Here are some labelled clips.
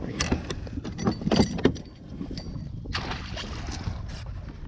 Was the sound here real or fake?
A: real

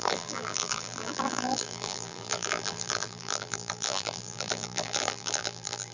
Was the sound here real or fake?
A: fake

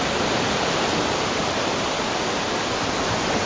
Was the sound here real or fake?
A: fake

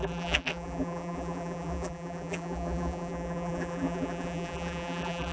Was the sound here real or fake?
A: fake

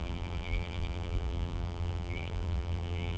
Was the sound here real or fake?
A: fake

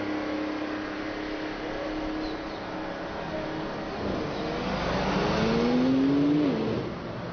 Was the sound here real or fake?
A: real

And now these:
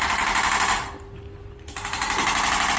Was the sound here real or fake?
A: real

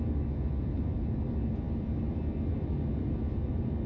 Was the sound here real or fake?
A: fake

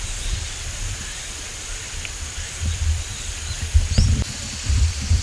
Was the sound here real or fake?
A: fake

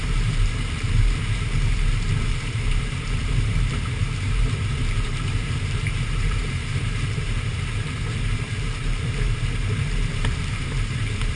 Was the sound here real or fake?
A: fake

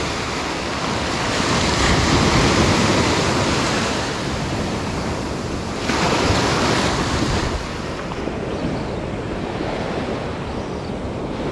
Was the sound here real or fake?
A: real